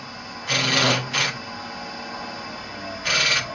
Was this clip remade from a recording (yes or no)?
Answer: no